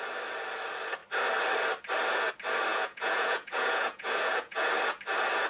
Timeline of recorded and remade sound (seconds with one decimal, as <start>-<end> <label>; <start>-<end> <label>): 0.0-2.7 recorded; 2.7-4.7 remade; 4.7-5.5 recorded